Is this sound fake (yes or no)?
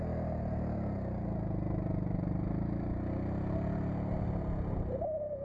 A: no